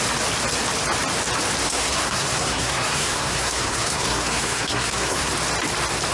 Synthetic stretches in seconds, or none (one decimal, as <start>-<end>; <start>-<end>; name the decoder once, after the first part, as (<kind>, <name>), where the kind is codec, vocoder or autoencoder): 1.6-5.3 (codec, SNAC)